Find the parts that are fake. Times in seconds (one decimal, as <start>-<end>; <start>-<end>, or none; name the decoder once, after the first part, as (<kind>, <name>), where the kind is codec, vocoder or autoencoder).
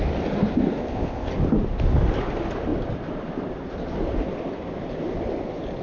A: 0.8-1.3 (codec, ZipCodec)